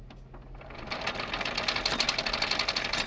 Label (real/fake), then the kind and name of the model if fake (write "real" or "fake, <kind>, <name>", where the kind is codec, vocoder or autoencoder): real